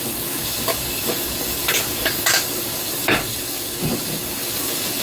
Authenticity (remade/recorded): remade